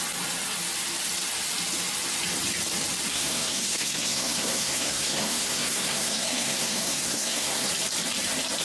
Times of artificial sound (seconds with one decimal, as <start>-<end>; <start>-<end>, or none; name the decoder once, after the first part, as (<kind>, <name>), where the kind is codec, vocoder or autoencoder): 3.1-7.7 (codec, SNAC)